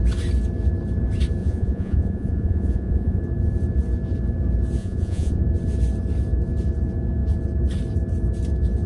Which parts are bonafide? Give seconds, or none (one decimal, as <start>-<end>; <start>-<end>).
0.0-1.4; 3.2-4.8; 5.4-8.9